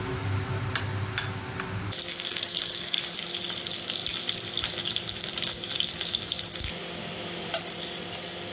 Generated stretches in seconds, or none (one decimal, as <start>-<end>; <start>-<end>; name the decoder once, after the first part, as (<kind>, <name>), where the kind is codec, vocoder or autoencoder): 2.1-3.0 (codec, SNAC)